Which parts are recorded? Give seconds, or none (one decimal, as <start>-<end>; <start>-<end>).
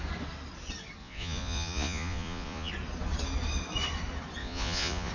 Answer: 0.0-1.0; 2.7-4.4